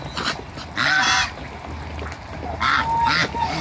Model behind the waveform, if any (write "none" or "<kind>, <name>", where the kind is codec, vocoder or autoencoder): none